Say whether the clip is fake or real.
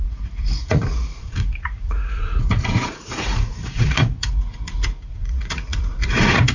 fake